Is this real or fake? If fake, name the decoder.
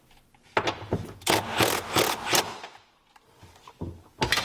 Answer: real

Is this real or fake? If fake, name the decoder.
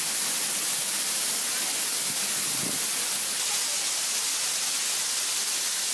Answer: real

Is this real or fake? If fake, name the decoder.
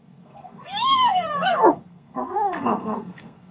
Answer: fake, codec, SNAC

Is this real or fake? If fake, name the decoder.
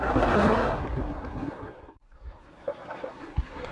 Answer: fake, codec, SNAC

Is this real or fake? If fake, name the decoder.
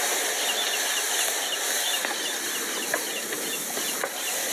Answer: real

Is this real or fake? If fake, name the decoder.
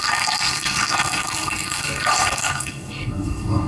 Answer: fake, codec, SNAC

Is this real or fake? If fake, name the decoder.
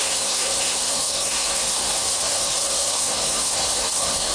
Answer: fake, codec, SNAC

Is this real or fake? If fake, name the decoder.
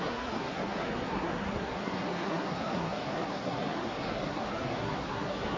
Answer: fake, codec, SNAC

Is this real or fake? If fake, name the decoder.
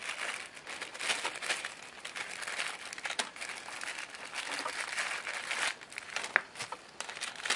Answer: real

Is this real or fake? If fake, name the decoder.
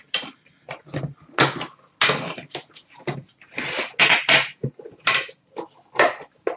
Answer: real